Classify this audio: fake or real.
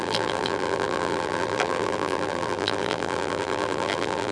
fake